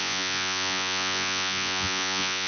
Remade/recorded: remade